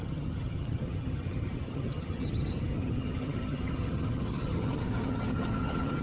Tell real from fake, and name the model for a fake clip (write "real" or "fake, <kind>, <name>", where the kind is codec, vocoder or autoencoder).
fake, vocoder, HiFi-GAN